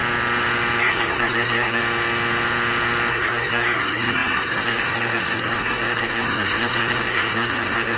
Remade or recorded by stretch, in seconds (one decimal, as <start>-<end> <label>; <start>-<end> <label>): 0.0-0.8 recorded; 0.8-1.8 remade; 1.8-3.1 recorded; 3.1-8.0 remade